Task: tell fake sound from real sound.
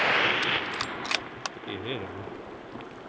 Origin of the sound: real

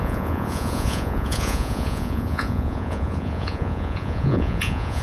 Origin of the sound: fake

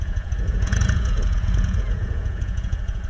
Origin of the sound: fake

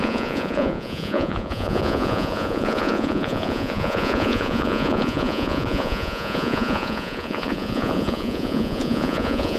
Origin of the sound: fake